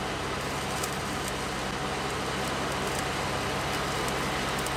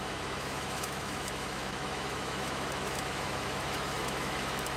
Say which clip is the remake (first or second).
second